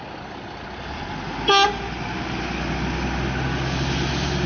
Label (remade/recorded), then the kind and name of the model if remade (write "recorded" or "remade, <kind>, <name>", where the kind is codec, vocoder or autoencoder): recorded